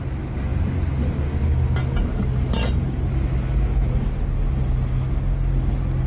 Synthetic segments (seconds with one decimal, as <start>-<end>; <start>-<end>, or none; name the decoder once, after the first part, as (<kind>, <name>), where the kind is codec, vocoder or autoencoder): none